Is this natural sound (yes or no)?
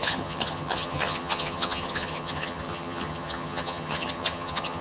no